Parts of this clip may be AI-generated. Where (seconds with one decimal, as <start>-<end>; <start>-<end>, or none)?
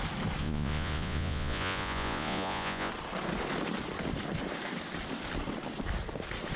0.4-2.9